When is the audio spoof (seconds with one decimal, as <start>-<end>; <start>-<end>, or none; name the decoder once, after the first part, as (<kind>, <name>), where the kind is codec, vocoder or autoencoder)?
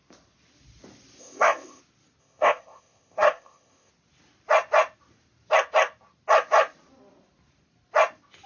1.2-1.8 (codec, ZipCodec); 2.2-3.9